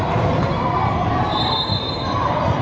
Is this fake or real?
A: fake